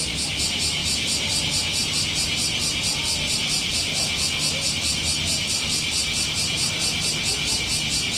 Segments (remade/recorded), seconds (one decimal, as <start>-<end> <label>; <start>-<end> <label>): 0.0-8.2 recorded